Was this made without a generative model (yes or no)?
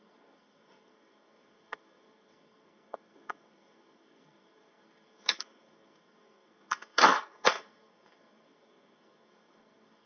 no